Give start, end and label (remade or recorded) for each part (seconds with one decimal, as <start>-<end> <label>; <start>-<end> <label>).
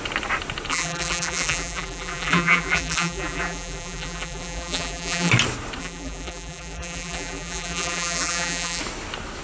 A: 0.0-0.7 recorded; 0.7-5.3 remade; 5.3-5.8 recorded; 5.8-8.8 remade; 8.8-9.4 recorded